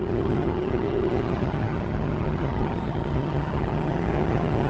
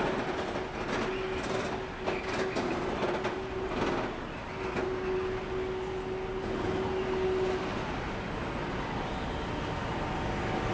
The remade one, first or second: first